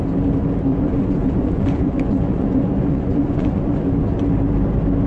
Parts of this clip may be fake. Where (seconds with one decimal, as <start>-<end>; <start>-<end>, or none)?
0.7-3.8